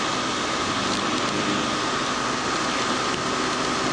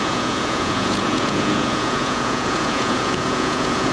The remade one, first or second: second